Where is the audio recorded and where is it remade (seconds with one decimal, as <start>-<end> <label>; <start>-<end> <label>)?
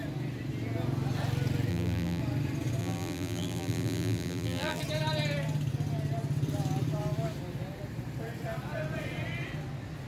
0.0-1.7 recorded; 1.7-2.2 remade; 2.2-2.8 recorded; 2.8-4.8 remade; 4.8-10.1 recorded